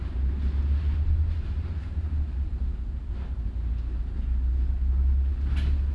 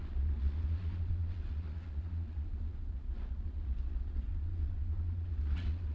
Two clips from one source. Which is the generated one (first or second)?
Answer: second